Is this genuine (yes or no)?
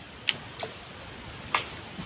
yes